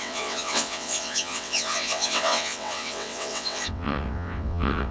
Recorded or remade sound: remade